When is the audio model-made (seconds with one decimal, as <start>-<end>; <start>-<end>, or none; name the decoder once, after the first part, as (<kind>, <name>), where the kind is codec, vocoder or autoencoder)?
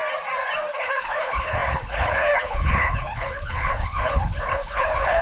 0.7-5.2 (codec, HILCodec)